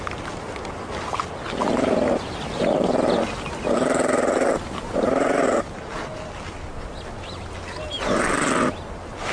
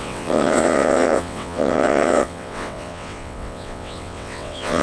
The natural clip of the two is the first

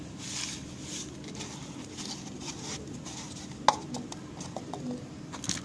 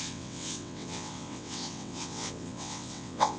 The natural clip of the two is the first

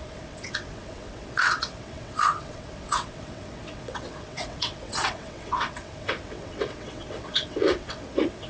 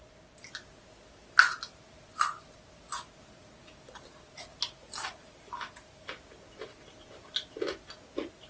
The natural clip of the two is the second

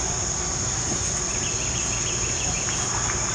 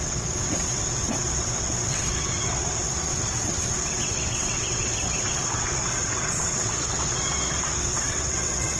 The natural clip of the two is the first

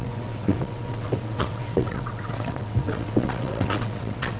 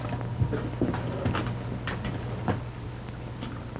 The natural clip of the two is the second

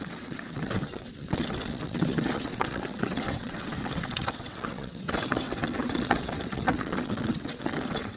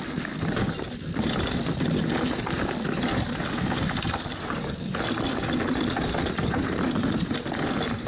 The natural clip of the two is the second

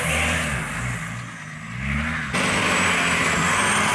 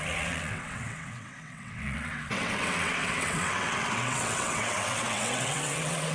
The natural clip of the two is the first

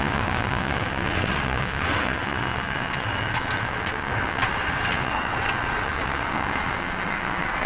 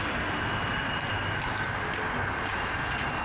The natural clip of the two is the second